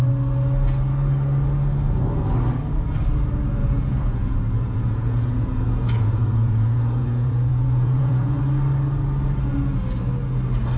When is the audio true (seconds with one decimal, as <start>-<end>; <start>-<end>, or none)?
0.0-3.6; 8.4-10.8